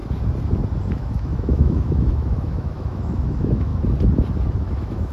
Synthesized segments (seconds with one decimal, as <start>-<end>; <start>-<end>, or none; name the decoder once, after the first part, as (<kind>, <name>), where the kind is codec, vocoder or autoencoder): 0.9-3.7 (autoencoder, DAC-VAE); 4.6-5.1